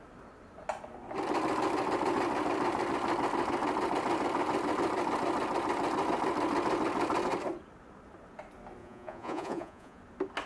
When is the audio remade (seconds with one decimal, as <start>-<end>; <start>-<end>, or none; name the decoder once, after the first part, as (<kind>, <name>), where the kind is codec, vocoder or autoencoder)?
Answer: 8.8-10.0 (vocoder, Vocos)